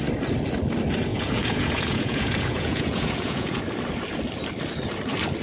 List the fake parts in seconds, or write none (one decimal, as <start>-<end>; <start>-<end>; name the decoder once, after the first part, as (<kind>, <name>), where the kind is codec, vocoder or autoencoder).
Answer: 1.1-3.6 (vocoder, Vocos)